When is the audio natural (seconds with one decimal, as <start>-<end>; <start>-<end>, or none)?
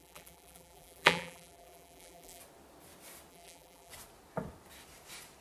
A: 2.4-3.3; 3.9-5.4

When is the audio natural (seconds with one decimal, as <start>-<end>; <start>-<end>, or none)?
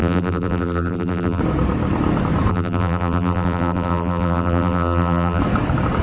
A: 1.4-2.5; 5.4-6.0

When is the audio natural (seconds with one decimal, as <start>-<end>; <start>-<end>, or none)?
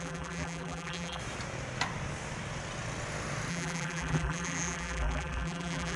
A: 1.2-3.5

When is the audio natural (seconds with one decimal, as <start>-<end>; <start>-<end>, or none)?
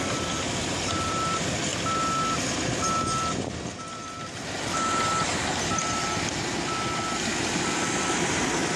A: 1.7-3.9; 5.3-8.4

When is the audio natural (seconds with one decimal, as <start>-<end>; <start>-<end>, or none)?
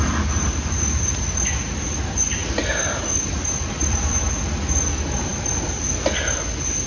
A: 0.0-2.4; 4.3-6.9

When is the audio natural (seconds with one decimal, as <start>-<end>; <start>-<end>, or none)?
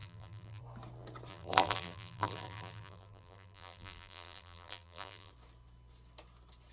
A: 0.6-1.3; 5.3-6.7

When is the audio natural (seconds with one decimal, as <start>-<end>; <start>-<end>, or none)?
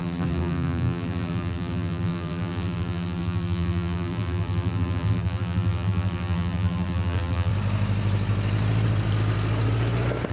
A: 7.5-10.3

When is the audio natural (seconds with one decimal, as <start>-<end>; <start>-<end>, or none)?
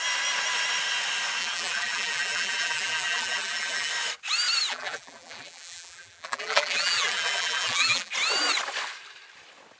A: 0.0-1.4; 3.9-4.7; 8.1-9.8